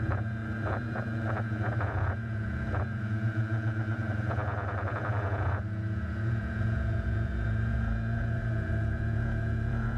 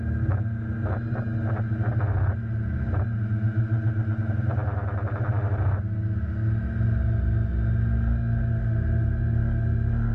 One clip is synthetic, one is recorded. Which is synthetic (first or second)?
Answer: first